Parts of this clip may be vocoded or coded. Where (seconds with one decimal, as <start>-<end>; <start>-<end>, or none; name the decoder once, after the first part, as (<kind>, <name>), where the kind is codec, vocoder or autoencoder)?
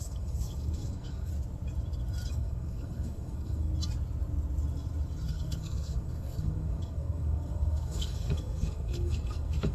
0.0-1.3 (codec, SNAC); 2.3-3.7; 5.3-9.7